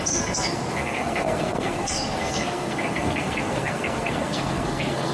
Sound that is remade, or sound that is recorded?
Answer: remade